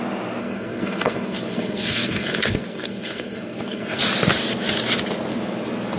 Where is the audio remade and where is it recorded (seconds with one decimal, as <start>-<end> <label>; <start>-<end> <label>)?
0.0-0.4 recorded; 0.4-4.0 remade; 4.0-6.0 recorded